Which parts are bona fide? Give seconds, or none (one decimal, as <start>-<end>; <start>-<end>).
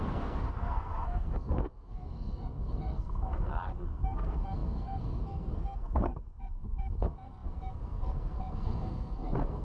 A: none